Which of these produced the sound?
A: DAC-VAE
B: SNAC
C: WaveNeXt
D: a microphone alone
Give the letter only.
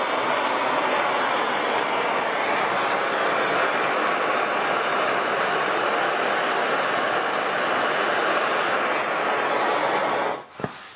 D